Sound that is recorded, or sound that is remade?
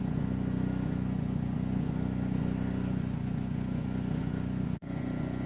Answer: remade